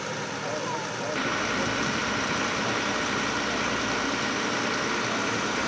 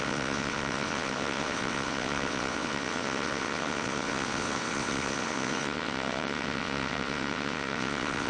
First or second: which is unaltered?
first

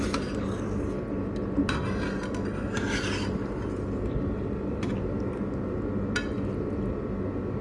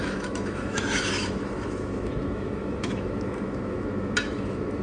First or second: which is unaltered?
first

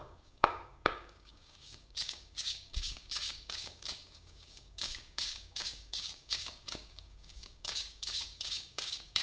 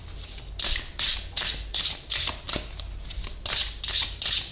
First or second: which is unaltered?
second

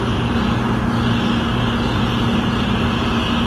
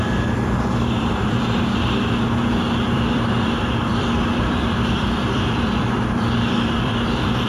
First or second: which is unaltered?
first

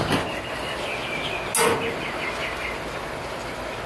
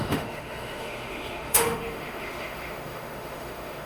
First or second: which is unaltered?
first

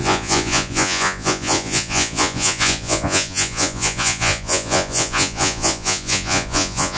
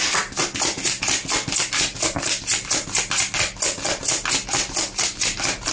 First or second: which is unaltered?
second